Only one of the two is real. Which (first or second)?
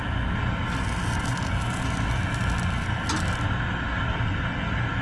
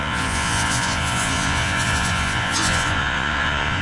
first